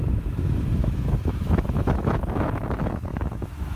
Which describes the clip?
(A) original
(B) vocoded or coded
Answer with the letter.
B